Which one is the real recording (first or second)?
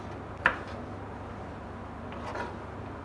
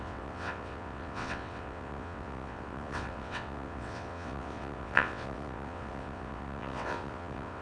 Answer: first